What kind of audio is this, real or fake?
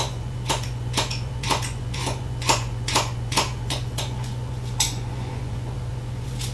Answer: fake